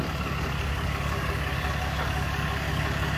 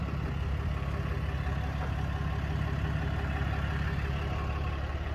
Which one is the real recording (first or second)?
second